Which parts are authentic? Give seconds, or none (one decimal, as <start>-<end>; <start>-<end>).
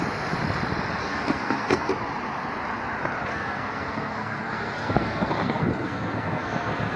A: 0.0-1.0; 1.9-3.3